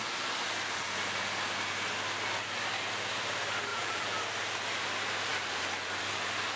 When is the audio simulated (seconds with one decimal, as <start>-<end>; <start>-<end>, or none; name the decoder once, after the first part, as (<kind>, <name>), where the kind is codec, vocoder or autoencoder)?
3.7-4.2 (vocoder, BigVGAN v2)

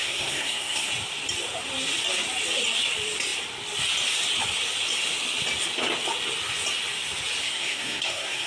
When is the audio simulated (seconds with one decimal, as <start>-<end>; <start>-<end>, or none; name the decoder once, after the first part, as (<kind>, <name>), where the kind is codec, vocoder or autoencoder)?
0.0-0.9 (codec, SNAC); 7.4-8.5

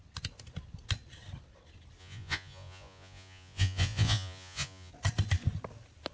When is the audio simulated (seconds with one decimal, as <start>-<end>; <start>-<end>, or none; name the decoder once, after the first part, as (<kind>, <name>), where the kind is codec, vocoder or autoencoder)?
2.0-4.9 (vocoder, Vocos)

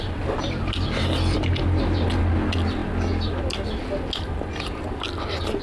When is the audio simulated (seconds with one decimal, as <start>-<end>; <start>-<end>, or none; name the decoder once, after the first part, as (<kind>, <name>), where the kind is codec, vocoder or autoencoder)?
none